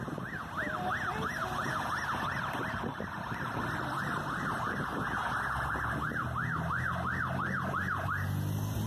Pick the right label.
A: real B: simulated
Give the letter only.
A